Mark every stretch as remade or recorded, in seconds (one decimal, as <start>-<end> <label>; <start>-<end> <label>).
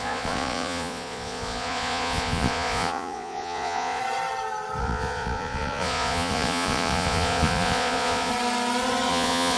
0.0-4.0 remade; 4.0-4.8 recorded; 4.8-8.3 remade; 8.3-9.1 recorded; 9.1-9.6 remade